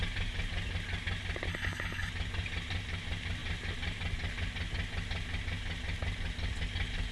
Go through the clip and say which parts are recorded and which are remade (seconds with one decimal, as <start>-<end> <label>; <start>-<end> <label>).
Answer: 0.0-1.5 recorded; 1.5-2.1 remade; 2.1-7.1 recorded